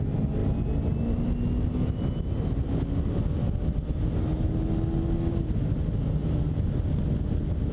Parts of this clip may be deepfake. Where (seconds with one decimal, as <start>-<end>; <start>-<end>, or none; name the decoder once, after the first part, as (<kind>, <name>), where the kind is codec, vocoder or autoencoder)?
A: none